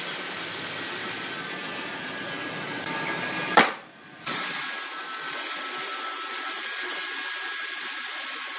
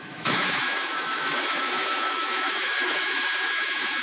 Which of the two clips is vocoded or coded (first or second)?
second